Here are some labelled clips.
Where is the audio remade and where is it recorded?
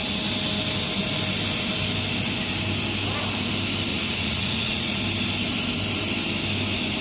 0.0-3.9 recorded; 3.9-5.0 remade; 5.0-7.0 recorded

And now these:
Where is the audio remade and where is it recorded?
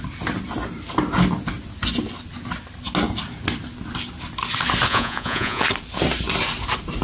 0.0-4.9 recorded; 4.9-5.6 remade; 5.6-7.0 recorded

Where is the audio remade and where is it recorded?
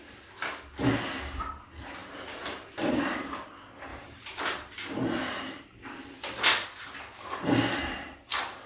0.0-2.0 recorded; 2.0-2.7 remade; 2.7-3.9 recorded; 3.9-4.4 remade; 4.4-8.7 recorded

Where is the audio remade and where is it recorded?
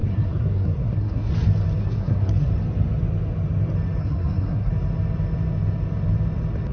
0.0-1.3 remade; 1.3-1.8 recorded; 1.8-2.5 remade; 2.5-4.0 recorded; 4.0-4.7 remade; 4.7-6.7 recorded